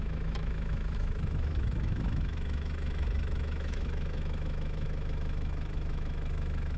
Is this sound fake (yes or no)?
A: yes